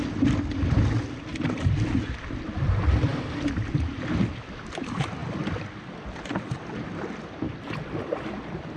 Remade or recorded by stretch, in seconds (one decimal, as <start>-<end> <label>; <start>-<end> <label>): 0.0-8.8 recorded

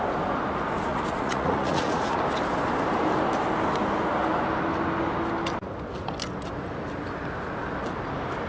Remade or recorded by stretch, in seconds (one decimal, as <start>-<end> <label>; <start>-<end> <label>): 0.0-0.9 recorded; 0.9-2.2 remade; 2.2-8.5 recorded

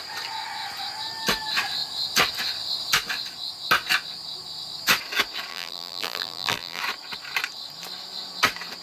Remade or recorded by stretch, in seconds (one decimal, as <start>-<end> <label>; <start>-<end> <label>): 0.0-5.5 recorded; 5.5-6.8 remade; 6.8-8.8 recorded

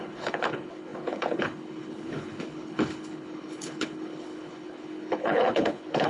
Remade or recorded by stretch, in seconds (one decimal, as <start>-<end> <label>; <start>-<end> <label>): 0.0-6.1 remade

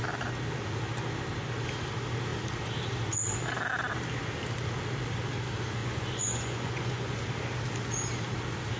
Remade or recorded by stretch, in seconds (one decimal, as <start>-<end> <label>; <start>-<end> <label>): 0.0-5.8 recorded; 5.8-7.2 remade; 7.2-8.8 recorded